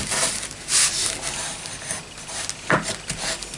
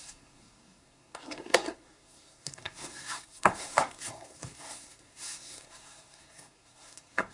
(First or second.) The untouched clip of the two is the first